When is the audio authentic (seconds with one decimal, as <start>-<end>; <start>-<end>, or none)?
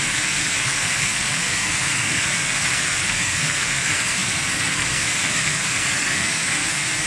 none